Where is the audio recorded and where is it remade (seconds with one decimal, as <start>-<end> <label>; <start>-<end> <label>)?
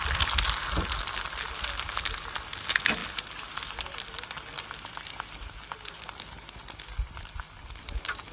0.0-3.0 recorded; 3.0-7.4 remade; 7.4-8.3 recorded